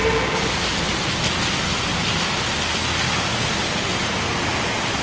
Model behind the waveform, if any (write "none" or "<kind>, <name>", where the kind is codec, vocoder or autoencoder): none